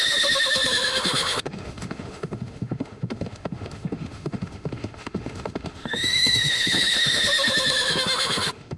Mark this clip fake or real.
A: fake